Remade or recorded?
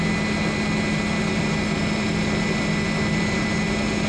recorded